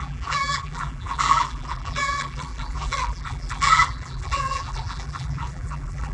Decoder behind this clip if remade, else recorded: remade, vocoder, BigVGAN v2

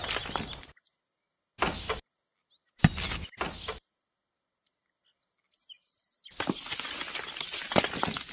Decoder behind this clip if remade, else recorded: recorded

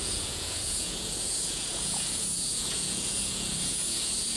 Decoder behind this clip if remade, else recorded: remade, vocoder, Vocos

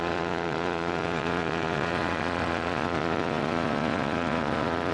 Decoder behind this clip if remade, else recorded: remade, vocoder, Vocos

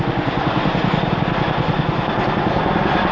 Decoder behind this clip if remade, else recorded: recorded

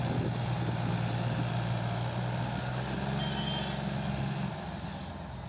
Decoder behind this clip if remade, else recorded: recorded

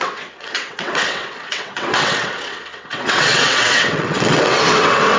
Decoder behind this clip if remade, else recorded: remade, vocoder, WaveNeXt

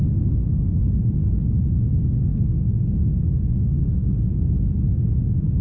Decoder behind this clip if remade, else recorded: recorded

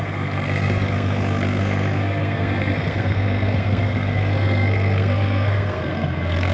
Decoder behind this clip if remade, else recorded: remade, codec, SNAC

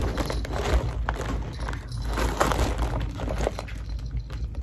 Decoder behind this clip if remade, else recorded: recorded